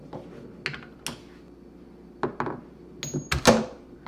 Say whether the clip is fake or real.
real